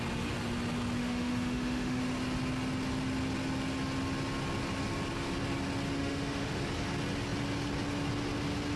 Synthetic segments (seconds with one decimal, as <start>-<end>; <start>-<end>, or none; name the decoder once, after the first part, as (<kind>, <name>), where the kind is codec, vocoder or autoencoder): 1.0-2.0 (autoencoder, DAC-VAE); 6.0-6.6